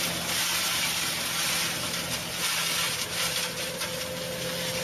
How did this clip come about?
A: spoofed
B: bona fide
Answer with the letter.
B